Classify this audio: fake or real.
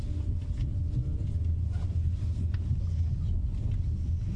real